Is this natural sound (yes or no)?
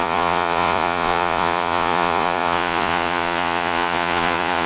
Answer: no